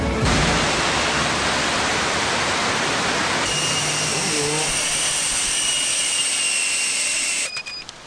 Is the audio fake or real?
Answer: real